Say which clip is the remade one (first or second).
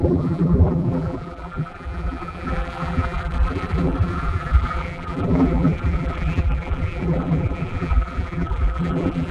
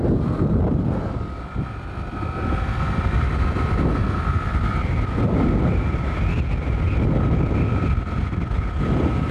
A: first